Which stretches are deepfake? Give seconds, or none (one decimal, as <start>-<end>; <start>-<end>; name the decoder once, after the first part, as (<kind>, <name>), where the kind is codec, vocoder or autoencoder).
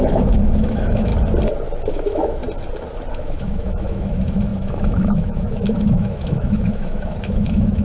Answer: 0.0-1.1 (autoencoder, DAC-VAE); 1.9-2.4; 3.1-7.8